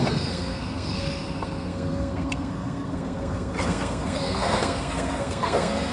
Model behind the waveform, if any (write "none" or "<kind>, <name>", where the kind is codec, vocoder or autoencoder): codec, SNAC